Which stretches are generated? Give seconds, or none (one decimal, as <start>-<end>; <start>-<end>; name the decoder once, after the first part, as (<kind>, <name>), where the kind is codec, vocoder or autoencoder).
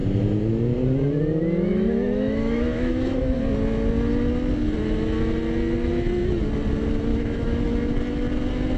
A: 1.7-3.4 (autoencoder, DAC-VAE); 7.1-7.6